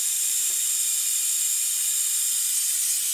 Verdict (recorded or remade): recorded